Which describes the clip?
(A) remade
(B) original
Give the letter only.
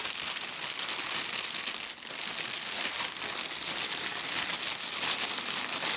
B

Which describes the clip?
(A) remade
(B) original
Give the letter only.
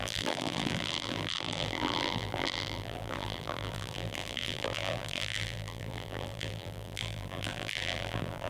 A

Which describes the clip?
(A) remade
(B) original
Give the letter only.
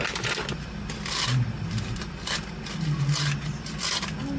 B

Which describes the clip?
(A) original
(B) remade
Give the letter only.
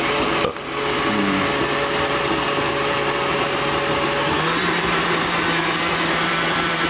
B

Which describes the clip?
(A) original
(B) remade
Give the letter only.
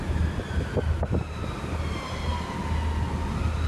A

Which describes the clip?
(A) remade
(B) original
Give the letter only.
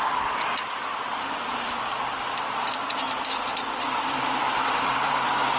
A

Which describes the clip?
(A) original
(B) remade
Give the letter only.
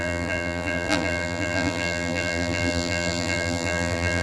B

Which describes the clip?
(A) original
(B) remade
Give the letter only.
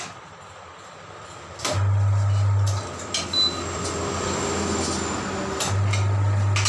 A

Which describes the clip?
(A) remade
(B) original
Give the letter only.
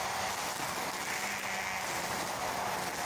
B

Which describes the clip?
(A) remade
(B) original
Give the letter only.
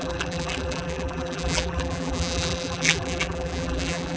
A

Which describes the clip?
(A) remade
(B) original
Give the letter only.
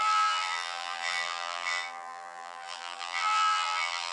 A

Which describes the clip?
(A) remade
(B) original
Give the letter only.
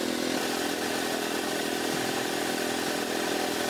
A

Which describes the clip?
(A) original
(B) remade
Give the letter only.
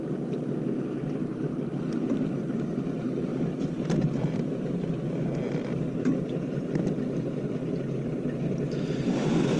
B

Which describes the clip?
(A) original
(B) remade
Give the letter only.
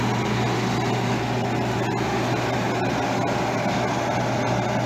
A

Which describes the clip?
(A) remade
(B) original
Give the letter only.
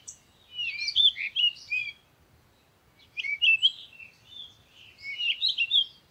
A